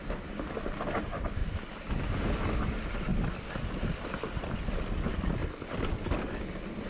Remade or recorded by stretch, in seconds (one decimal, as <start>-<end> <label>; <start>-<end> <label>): 0.0-1.4 remade; 1.4-2.7 recorded; 2.7-5.4 remade; 5.4-6.3 recorded; 6.3-6.9 remade